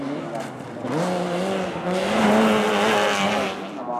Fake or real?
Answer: real